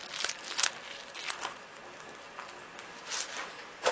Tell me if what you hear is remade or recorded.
recorded